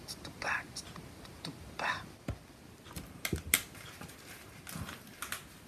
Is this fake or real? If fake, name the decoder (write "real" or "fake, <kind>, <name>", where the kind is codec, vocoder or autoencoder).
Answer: real